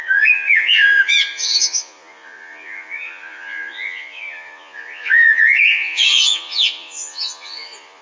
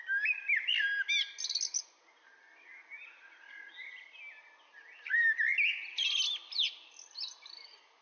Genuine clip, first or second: second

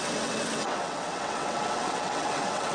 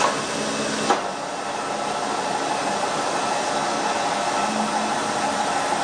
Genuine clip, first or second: second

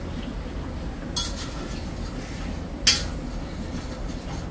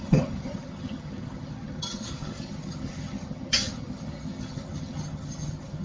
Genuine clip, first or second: first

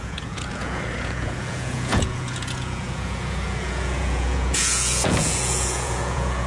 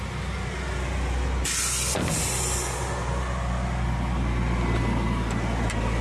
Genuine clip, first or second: second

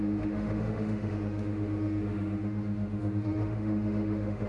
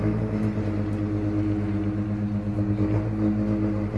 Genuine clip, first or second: second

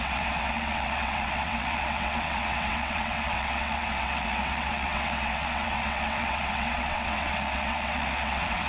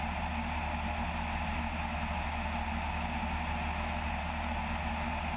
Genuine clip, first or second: second